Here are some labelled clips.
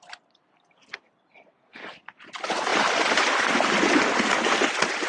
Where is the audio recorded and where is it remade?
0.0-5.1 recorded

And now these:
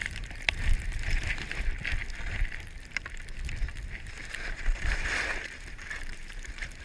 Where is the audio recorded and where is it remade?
0.0-1.4 remade; 1.4-6.1 recorded; 6.1-6.8 remade

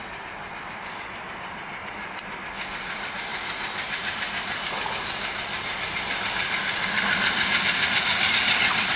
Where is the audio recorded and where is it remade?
0.0-9.0 recorded

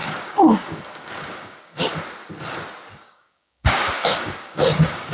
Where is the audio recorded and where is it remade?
0.0-1.9 remade; 1.9-3.0 recorded; 3.0-5.1 remade

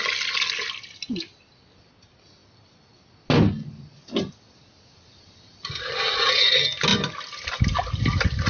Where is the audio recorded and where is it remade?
0.0-8.5 recorded

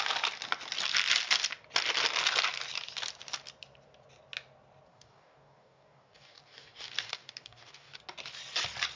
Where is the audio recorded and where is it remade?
0.0-4.9 recorded; 4.9-8.0 remade; 8.0-9.0 recorded